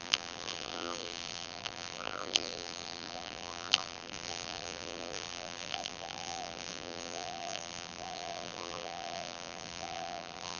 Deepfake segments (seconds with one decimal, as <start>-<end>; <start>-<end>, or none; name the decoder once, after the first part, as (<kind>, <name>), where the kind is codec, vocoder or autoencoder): 0.0-10.6 (vocoder, BigVGAN v2)